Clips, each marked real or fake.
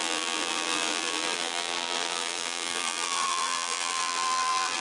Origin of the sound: fake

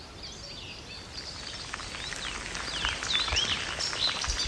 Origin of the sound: real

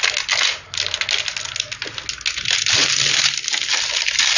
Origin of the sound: real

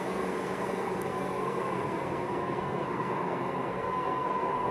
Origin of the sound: fake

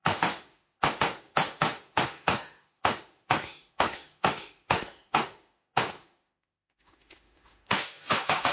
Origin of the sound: fake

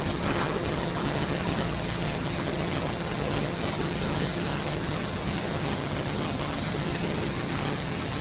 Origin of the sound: fake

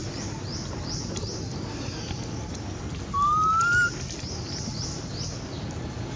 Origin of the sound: real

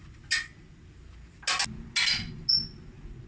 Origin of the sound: real